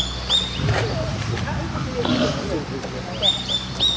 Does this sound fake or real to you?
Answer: real